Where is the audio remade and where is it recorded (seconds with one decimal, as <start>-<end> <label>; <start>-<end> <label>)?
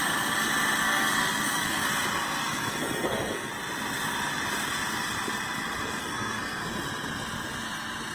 0.0-0.8 recorded; 0.8-1.8 remade; 1.8-2.4 recorded; 2.4-3.5 remade; 3.5-6.0 recorded; 6.0-6.6 remade; 6.6-8.1 recorded